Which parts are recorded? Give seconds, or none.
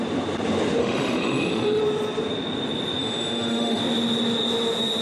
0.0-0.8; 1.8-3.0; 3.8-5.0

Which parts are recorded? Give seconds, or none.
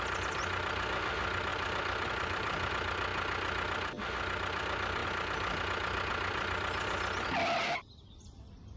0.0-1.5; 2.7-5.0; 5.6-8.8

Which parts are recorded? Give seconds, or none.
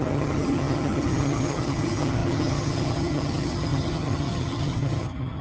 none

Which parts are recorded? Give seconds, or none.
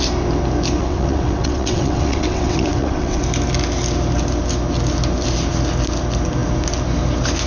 0.0-0.8; 3.2-7.5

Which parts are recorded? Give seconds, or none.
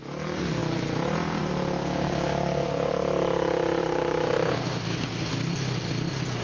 0.0-1.8; 2.9-3.8; 5.1-6.4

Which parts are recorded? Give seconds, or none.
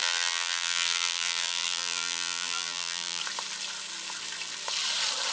3.2-5.3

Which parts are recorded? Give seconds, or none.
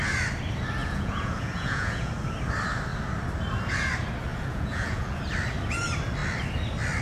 0.0-0.8; 2.1-4.3; 5.2-7.0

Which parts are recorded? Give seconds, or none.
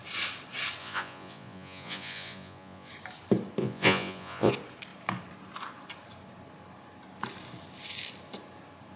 0.0-0.8; 2.9-3.6; 4.5-9.0